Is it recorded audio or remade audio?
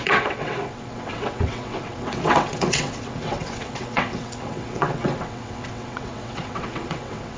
remade